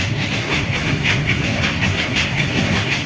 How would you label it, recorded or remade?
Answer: remade